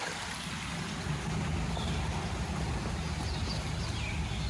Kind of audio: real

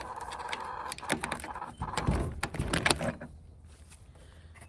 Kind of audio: real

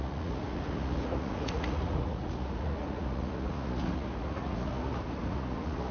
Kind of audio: fake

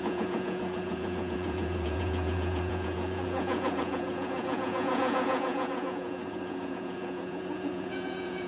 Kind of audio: fake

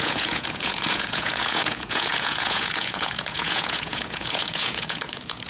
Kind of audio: fake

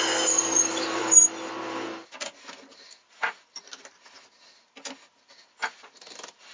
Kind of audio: real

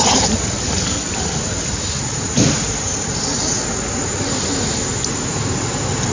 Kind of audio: real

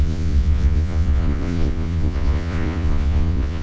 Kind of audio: fake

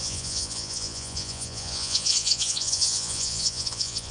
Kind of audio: fake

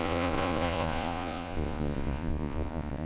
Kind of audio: fake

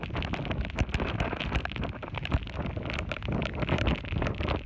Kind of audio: real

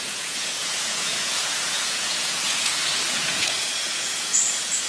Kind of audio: fake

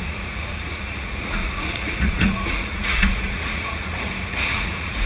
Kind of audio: fake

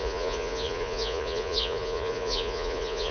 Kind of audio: fake